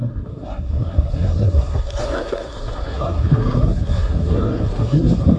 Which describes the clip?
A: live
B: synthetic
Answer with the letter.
B